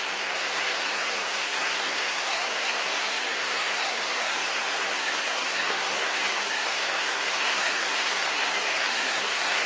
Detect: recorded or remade remade